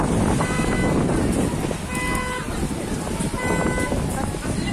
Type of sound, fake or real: real